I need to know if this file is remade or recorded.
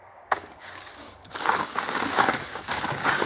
remade